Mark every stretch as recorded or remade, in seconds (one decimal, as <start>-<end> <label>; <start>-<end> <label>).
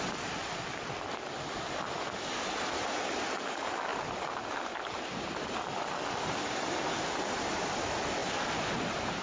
0.0-8.2 recorded; 8.2-9.2 remade